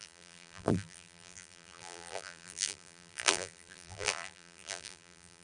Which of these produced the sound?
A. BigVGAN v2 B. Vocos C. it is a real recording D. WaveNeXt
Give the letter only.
A